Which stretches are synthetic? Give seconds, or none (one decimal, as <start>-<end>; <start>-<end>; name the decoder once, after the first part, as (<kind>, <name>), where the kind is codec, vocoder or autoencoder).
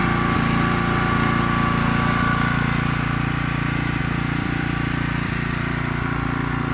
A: 4.0-6.7 (vocoder, BigVGAN v2)